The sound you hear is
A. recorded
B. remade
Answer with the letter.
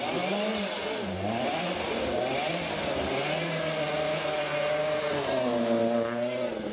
A